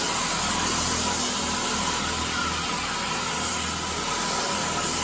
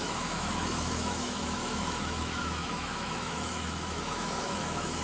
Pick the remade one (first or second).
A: second